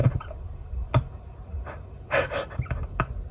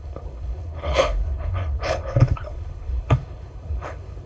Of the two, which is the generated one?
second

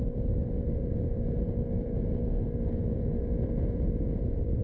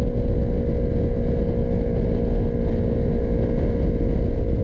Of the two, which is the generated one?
first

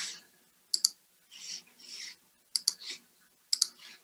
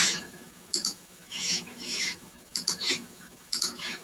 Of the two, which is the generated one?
second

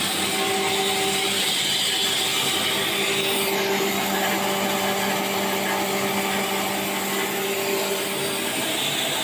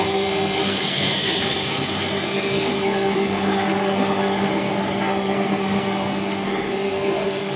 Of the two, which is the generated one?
second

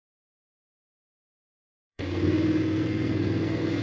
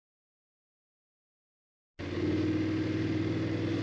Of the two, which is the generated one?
first